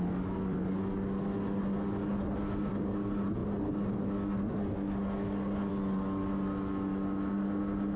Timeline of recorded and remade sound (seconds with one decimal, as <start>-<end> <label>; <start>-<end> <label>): 0.0-8.0 recorded